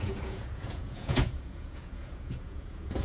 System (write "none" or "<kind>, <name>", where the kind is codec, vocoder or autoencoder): vocoder, Vocos